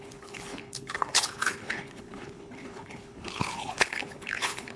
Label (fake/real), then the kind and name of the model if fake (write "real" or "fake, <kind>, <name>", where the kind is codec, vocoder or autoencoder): fake, codec, HILCodec